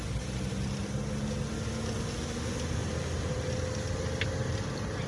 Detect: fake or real real